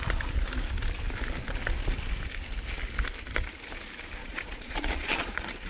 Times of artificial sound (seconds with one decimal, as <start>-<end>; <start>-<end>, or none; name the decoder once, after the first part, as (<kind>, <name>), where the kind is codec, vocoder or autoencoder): 4.2-5.7 (vocoder, Vocos)